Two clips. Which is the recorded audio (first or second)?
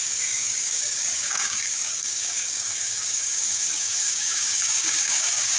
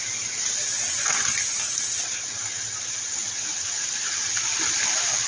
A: second